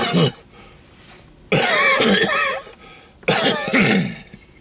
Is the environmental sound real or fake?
real